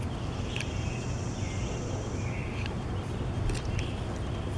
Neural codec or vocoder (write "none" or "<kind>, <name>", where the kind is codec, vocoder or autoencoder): none